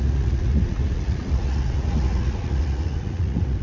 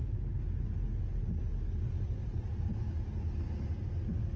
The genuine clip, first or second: second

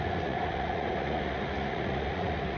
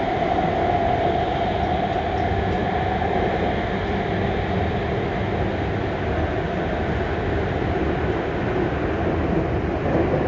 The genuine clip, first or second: second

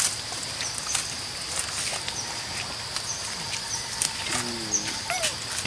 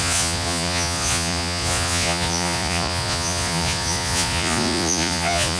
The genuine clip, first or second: first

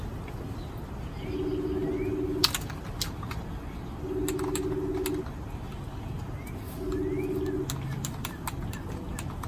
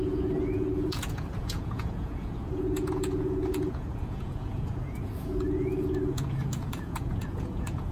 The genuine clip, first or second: first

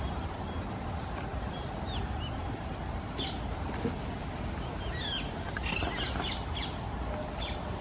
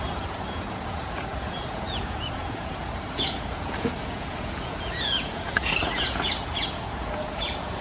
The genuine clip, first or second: first